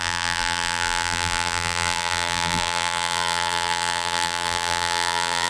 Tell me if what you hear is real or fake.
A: fake